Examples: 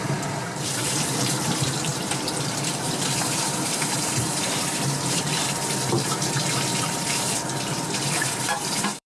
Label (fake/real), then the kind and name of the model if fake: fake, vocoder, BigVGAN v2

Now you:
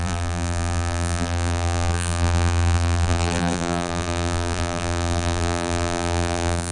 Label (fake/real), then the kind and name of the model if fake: fake, vocoder, BigVGAN v2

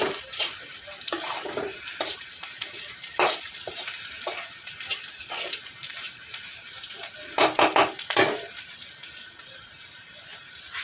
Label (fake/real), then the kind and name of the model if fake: fake, vocoder, BigVGAN v2